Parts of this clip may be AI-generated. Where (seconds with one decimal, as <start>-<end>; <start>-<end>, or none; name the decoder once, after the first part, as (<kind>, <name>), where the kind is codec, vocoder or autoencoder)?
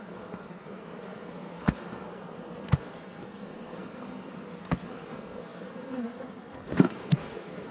0.0-7.7 (codec, SNAC)